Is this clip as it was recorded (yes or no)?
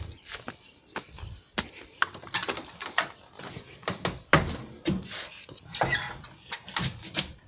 yes